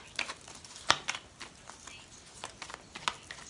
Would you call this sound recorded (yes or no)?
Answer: yes